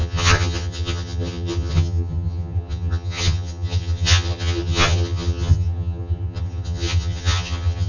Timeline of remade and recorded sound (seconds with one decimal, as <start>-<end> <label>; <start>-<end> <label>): 0.0-7.9 remade